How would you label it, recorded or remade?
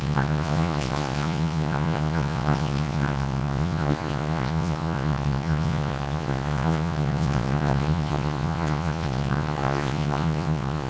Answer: remade